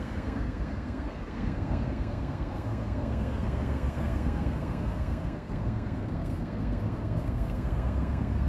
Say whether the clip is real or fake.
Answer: fake